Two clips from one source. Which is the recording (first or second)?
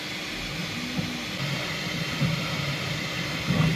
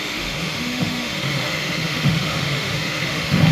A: first